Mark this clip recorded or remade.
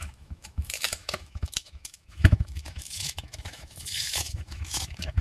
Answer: remade